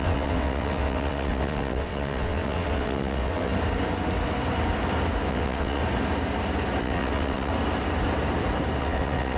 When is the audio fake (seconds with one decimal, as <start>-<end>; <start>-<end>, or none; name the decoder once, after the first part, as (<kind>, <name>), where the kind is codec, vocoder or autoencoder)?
0.0-3.5 (vocoder, WaveNeXt); 5.3-5.8; 6.8-7.5; 8.8-9.4